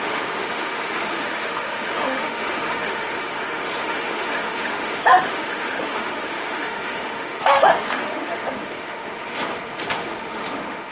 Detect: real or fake fake